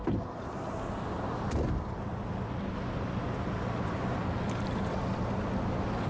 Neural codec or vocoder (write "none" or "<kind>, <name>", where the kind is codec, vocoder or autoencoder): none